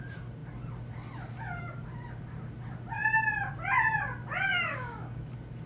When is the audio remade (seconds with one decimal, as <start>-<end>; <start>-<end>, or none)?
4.5-5.3